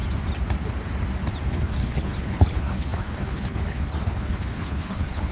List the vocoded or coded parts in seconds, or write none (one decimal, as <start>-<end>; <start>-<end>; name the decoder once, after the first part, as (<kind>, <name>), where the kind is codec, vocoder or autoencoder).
1.5-5.3 (codec, HILCodec)